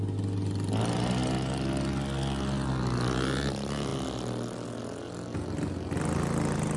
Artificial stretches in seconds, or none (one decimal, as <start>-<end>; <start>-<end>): none